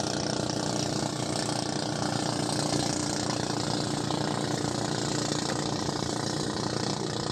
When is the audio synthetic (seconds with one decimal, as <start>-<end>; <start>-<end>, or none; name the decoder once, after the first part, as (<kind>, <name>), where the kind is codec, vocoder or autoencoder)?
none